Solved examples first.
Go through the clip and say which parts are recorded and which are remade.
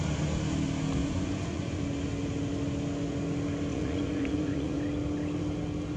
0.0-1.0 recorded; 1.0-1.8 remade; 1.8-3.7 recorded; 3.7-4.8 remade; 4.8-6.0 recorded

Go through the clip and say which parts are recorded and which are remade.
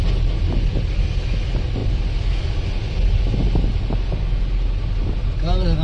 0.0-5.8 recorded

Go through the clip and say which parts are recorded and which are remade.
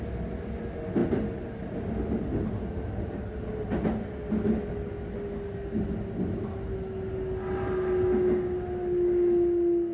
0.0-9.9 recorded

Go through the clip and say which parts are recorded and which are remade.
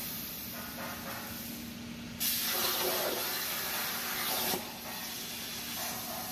0.0-6.3 recorded